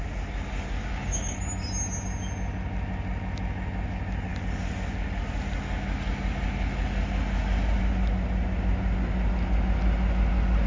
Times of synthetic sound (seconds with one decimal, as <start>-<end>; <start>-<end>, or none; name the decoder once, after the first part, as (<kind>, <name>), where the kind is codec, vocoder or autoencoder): 0.8-1.4 (codec, DAC)